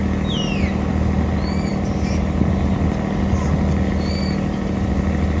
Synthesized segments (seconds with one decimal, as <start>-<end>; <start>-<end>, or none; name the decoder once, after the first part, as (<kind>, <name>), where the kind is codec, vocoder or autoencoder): none

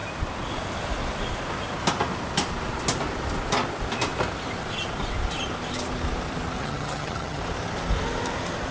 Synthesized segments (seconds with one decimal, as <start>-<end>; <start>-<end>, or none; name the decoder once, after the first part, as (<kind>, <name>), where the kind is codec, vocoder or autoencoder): 6.6-7.4 (vocoder, HiFi-GAN)

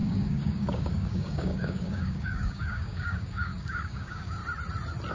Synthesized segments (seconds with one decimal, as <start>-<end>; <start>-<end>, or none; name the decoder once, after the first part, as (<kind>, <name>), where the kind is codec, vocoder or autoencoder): 0.0-4.4 (codec, DAC)

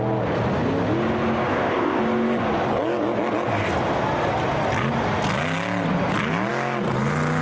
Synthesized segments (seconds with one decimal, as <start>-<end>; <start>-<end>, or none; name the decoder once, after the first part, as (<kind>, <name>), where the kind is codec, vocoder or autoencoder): 1.5-2.0 (codec, ZipCodec)

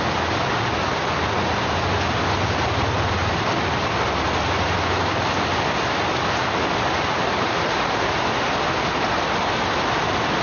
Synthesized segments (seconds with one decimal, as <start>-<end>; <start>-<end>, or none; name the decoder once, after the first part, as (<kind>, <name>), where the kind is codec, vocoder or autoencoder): none

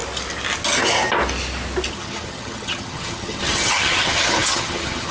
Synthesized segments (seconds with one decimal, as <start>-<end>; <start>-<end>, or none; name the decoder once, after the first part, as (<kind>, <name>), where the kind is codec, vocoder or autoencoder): 1.9-5.1 (vocoder, HiFi-GAN)

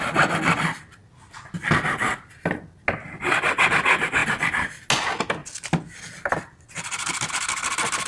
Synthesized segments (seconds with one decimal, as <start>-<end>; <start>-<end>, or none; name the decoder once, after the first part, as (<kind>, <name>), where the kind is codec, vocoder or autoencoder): none

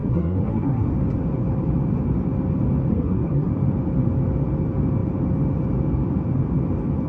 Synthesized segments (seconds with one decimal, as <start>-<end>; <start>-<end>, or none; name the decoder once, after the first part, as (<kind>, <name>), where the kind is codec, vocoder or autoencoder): 0.0-0.9 (codec, SNAC); 2.9-3.5